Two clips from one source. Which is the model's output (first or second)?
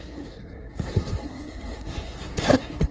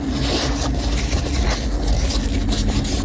first